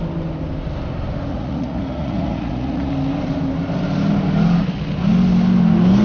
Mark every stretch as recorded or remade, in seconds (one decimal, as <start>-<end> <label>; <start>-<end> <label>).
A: 0.0-1.3 recorded; 1.3-2.9 remade; 2.9-6.0 recorded